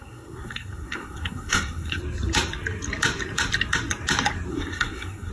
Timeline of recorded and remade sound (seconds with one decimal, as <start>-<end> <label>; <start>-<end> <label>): 0.0-2.0 remade; 2.0-4.5 recorded; 4.5-5.3 remade

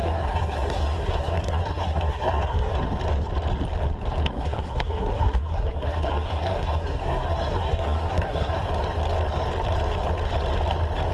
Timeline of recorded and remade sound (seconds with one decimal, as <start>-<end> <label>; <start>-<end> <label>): 0.0-2.7 remade; 2.7-4.3 recorded; 4.3-8.7 remade; 8.7-11.1 recorded

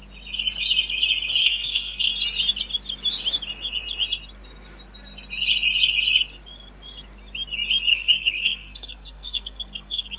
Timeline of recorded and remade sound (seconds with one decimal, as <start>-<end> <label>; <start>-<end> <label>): 0.0-1.4 recorded; 1.4-2.1 remade; 2.1-7.9 recorded; 7.9-10.2 remade

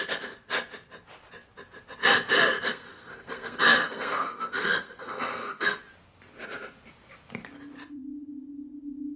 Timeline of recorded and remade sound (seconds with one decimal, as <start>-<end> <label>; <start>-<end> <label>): 0.0-2.7 recorded; 2.7-5.8 remade; 5.8-9.2 recorded

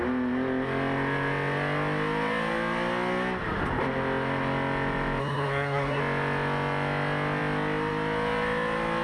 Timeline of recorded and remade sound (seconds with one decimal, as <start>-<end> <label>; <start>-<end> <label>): 0.0-5.2 recorded; 5.2-6.0 remade; 6.0-9.0 recorded